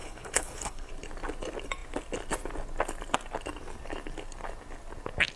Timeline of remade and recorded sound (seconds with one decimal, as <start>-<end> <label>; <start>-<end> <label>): 0.0-0.9 remade; 0.9-5.4 recorded